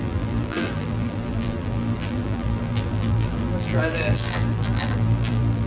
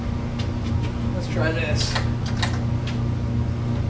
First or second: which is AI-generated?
first